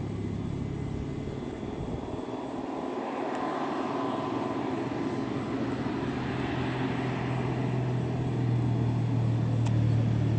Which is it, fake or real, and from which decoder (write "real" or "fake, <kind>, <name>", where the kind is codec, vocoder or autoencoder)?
real